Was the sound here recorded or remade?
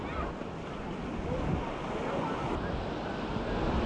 recorded